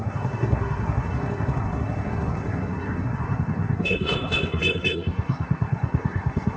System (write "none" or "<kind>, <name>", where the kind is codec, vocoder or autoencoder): codec, SNAC